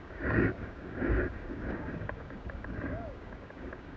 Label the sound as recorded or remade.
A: remade